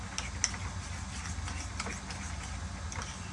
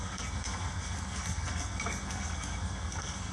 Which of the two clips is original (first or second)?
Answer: first